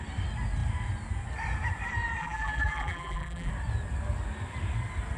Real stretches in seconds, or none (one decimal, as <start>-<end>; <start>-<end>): 0.0-2.2; 3.5-5.2